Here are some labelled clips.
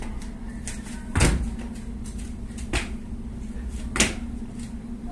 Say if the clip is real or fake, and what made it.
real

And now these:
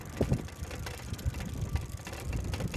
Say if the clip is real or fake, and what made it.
real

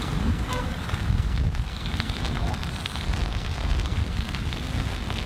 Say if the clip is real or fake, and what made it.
fake, codec, SNAC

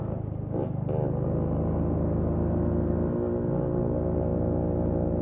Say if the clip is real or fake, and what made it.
real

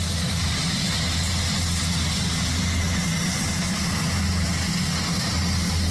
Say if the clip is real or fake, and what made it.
real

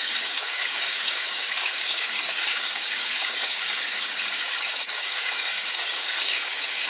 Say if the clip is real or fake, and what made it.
fake, codec, DAC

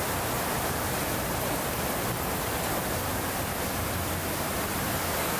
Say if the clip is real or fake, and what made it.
real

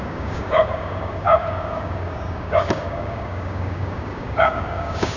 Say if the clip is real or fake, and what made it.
fake, codec, DAC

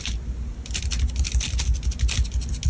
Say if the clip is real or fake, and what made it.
real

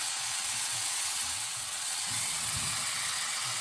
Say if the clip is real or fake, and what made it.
fake, vocoder, WaveNeXt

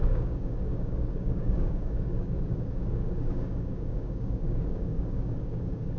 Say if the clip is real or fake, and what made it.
fake, codec, DAC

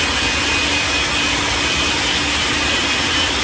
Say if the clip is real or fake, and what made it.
real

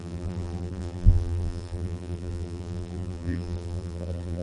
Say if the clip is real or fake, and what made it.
fake, vocoder, BigVGAN v2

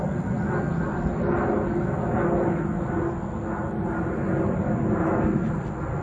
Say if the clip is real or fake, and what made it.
real